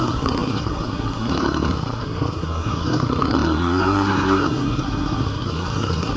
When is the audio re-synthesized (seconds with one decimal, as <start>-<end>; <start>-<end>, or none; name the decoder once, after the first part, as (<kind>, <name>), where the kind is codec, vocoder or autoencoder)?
0.0-6.2 (codec, SNAC)